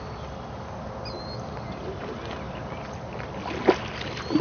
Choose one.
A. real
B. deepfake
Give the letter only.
A